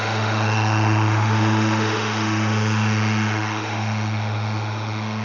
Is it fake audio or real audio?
fake